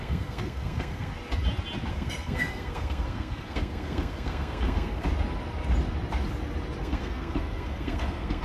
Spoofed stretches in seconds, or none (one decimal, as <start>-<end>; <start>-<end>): 0.0-1.1; 1.9-5.1; 6.8-8.4